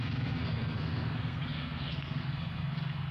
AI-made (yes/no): yes